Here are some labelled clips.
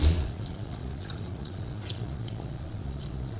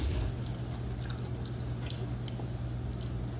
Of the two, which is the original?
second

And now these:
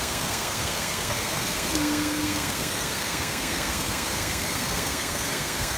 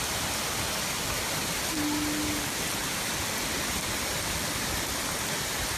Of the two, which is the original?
second